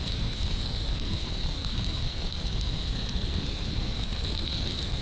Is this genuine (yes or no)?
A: no